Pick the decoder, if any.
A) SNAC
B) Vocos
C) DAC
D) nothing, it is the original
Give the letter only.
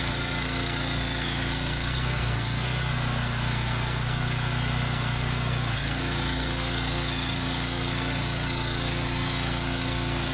A